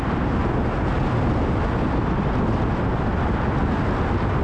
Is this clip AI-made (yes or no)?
no